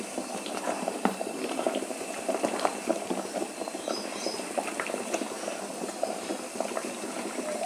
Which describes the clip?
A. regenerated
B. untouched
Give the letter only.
A